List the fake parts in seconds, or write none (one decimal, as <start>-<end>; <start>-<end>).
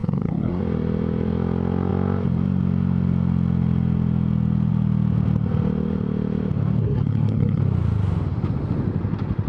0.0-0.6; 6.8-7.6